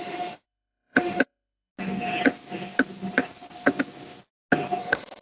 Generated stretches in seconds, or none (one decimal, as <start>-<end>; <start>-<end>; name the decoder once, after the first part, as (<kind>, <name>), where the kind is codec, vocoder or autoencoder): 0.0-1.7 (autoencoder, DAC-VAE); 4.8-5.2